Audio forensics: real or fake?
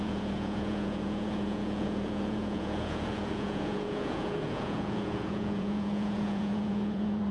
fake